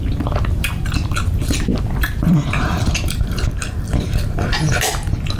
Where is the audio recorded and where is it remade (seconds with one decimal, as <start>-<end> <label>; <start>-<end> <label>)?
0.0-5.4 remade